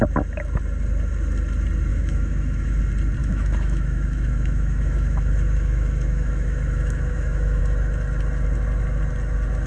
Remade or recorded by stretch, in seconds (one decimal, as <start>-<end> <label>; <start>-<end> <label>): 0.0-1.9 recorded; 1.9-2.8 remade; 2.8-3.2 recorded; 3.2-7.6 remade; 7.6-9.7 recorded